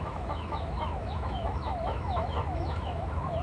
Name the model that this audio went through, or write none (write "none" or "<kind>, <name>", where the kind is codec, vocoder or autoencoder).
autoencoder, DAC-VAE